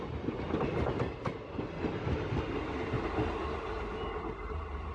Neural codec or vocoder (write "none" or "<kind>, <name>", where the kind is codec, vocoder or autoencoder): none